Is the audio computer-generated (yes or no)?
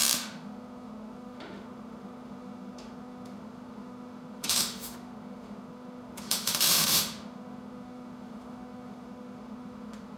yes